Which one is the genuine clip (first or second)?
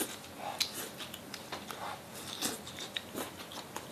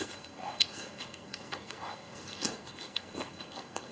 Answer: first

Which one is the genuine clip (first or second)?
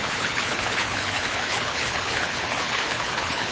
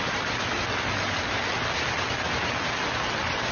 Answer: second